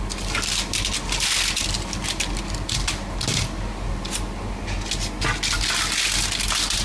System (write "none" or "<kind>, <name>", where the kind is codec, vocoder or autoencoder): none